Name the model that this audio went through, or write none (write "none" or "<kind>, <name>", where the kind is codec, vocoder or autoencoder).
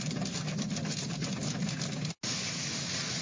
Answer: none